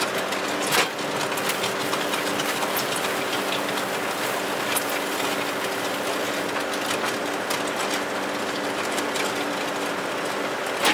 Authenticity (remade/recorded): recorded